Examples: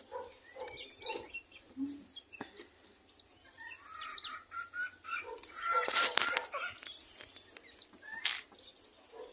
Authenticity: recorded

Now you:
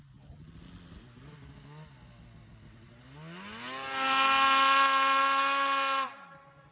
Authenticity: recorded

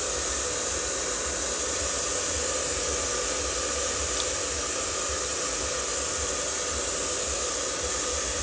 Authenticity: recorded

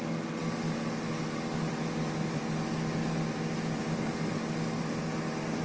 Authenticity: recorded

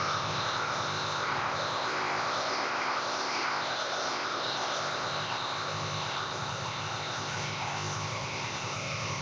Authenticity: remade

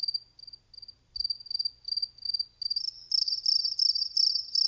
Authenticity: recorded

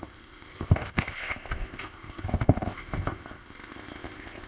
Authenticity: remade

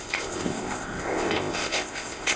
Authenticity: remade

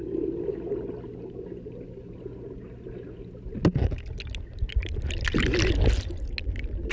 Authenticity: recorded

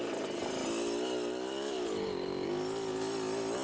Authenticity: recorded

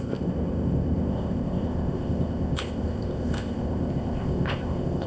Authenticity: remade